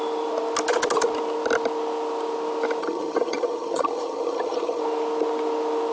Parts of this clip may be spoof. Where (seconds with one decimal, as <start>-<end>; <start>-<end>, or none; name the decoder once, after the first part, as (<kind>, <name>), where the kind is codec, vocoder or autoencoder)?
2.8-4.8 (vocoder, HiFi-GAN)